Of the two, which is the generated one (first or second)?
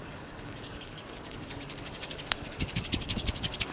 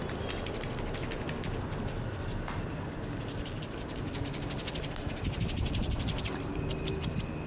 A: first